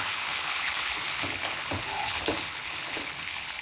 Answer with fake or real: fake